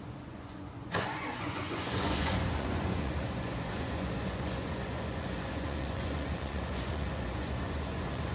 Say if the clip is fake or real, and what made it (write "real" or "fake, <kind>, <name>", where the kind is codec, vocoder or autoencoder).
fake, vocoder, Vocos